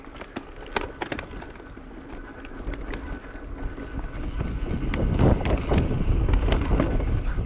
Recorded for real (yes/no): yes